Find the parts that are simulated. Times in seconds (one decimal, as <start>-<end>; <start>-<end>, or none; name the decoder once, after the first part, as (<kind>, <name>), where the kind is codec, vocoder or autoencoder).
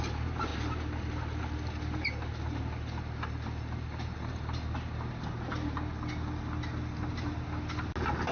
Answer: none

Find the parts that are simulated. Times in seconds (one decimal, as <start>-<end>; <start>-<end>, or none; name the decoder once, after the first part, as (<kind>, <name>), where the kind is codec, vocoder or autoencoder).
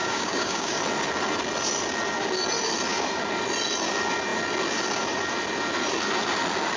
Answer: 0.0-0.8 (codec, DAC)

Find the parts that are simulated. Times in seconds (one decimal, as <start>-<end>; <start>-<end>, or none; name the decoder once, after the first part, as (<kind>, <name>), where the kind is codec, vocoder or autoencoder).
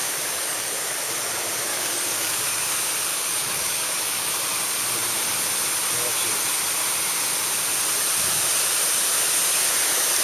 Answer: 0.0-1.1 (codec, DAC); 1.7-2.7; 3.1-4.3